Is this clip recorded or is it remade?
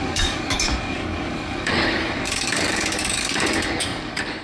remade